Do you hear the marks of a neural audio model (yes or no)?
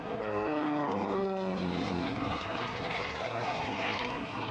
yes